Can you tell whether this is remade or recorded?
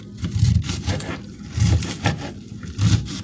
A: recorded